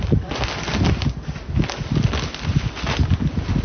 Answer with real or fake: real